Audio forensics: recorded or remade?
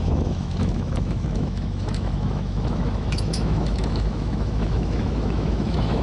remade